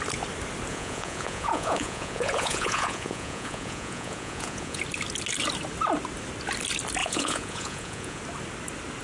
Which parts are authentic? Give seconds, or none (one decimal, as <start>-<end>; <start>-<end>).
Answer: 0.0-0.7; 4.8-7.0; 8.2-9.0